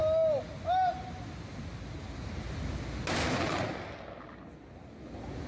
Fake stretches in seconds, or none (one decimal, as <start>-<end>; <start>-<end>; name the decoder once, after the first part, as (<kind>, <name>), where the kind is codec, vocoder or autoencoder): none